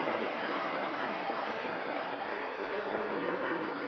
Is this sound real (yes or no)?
no